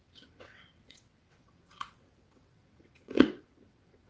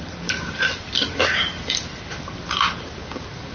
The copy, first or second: first